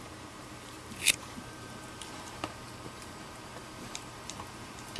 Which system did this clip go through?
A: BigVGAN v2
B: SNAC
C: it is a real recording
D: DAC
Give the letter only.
A